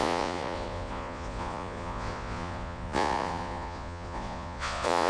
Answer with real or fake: fake